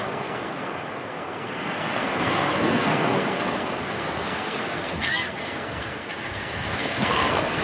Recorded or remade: remade